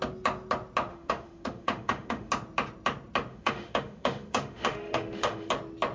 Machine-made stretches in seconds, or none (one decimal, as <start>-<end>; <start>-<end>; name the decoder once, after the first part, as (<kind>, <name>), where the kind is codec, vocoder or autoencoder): 0.9-2.3 (autoencoder, DAC-VAE); 3.3-5.5